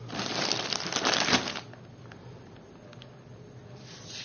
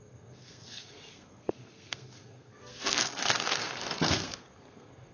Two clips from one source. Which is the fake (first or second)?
second